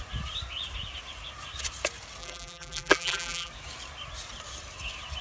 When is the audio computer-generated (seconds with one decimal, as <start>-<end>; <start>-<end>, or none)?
2.2-3.5